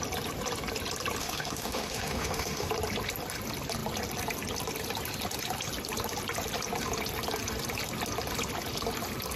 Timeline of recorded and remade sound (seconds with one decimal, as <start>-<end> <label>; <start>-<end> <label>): 0.0-1.2 recorded; 1.2-2.7 remade; 2.7-9.4 recorded